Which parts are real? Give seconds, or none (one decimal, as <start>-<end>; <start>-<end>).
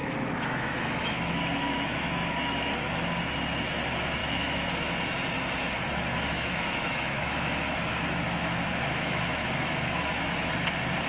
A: 3.0-4.2; 4.7-6.1; 10.5-11.1